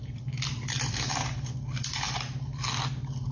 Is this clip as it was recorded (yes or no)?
no